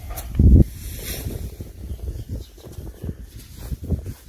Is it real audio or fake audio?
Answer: real